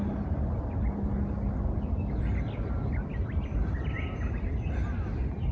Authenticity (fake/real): real